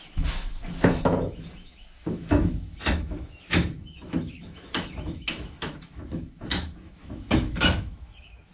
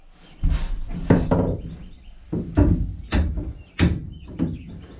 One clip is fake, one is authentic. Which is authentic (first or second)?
second